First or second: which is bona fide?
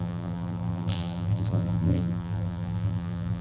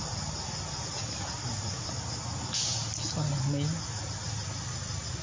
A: second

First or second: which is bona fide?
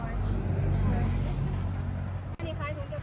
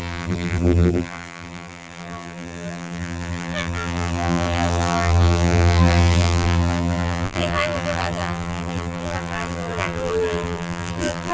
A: first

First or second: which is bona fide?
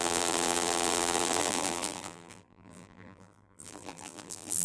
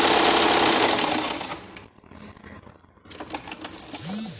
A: second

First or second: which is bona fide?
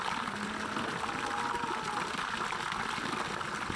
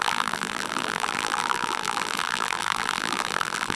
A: first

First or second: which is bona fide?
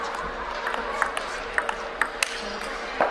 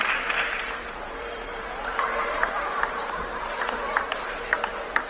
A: first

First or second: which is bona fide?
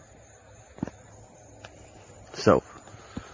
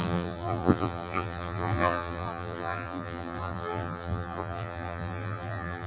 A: first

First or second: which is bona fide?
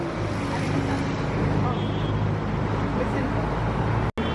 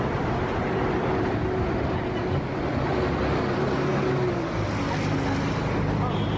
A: first